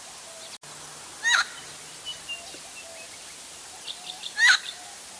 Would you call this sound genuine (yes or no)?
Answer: yes